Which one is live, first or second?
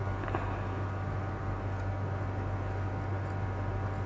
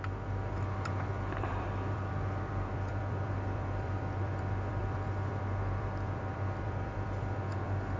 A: first